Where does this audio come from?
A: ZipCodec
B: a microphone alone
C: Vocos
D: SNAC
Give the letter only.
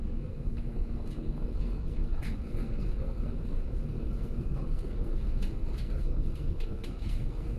D